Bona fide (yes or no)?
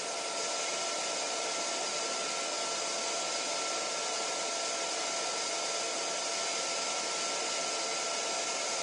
yes